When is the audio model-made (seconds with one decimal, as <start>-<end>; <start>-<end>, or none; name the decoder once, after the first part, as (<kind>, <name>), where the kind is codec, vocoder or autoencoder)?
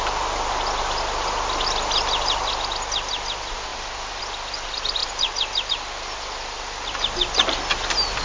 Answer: 3.7-4.2 (vocoder, BigVGAN v2)